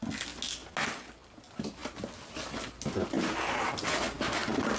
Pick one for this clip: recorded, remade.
recorded